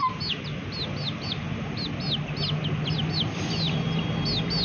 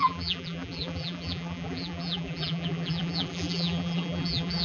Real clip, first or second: first